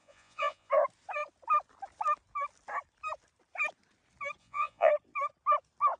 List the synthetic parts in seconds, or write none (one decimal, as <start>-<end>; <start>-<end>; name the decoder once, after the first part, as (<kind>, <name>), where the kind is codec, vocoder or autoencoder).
0.0-0.7 (vocoder, Vocos); 4.4-4.9